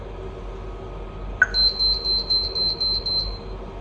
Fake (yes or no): no